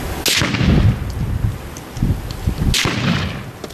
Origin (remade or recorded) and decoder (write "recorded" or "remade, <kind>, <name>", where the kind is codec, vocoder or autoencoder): recorded